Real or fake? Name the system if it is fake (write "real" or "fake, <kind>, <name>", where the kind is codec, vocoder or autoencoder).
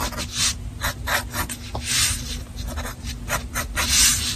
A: real